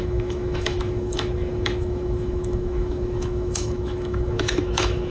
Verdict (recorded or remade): remade